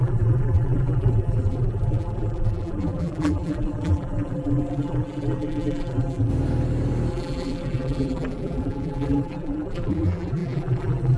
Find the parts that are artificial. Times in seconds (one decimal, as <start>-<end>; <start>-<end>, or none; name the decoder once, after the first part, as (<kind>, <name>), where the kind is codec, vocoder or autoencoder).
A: 0.0-6.3 (vocoder, BigVGAN v2); 7.1-11.2